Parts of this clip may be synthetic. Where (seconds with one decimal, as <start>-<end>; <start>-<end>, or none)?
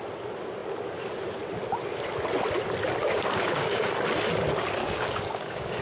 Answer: 3.0-3.9; 4.8-5.8